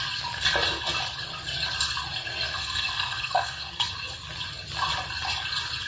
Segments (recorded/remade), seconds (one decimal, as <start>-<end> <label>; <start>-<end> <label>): 0.0-2.5 recorded; 2.5-3.9 remade; 3.9-5.9 recorded